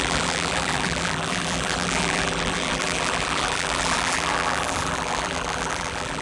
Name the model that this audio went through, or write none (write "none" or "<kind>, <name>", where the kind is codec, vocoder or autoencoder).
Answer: vocoder, BigVGAN v2